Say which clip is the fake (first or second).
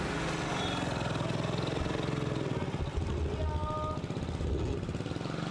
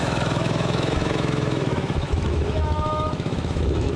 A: second